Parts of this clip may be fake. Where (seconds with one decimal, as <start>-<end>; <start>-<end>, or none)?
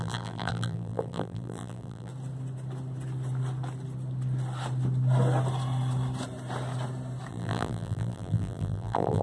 0.0-2.1; 7.3-9.2